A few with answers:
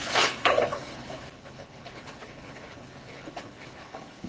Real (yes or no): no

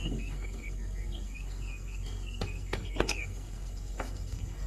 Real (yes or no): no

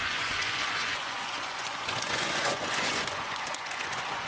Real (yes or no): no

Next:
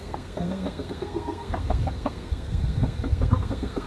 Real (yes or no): no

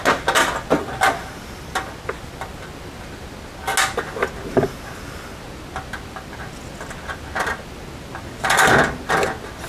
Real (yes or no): yes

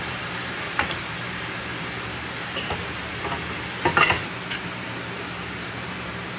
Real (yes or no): no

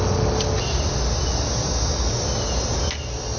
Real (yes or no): yes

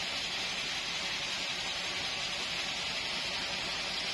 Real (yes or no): yes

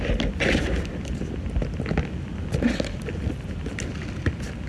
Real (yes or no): yes